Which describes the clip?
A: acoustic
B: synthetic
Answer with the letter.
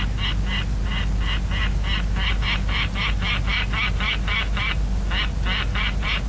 A